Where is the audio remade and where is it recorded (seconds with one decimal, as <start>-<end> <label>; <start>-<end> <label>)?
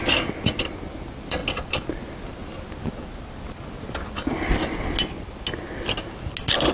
0.0-6.7 recorded